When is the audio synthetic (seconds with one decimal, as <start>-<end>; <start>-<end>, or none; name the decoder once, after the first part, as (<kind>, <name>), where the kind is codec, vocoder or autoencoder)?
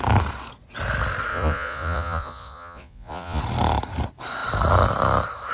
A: 1.3-3.4 (vocoder, Vocos)